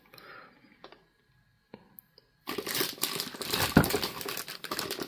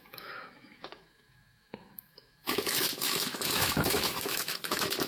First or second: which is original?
first